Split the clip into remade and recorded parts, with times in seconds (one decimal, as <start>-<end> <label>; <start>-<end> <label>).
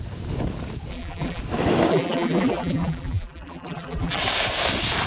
0.0-0.9 recorded; 0.9-1.4 remade; 1.4-1.9 recorded; 1.9-4.2 remade; 4.2-5.1 recorded